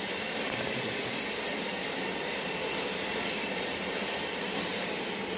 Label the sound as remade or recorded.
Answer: remade